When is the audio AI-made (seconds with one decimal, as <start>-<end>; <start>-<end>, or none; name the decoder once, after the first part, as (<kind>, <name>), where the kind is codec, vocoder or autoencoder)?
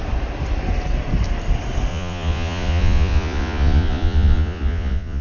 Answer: 1.9-5.2 (vocoder, Vocos)